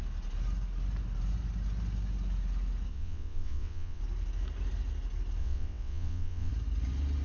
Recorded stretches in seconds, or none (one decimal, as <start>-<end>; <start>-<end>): 0.0-2.9; 4.0-5.4; 6.5-7.2